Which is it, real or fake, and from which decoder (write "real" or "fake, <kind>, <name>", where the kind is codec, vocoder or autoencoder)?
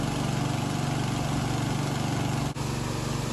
real